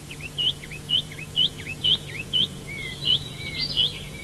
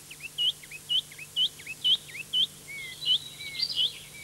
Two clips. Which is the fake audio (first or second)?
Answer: first